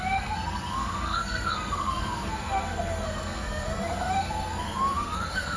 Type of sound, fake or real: fake